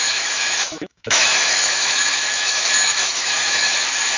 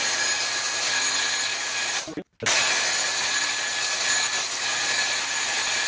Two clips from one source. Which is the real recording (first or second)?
second